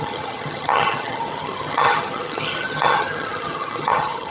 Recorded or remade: remade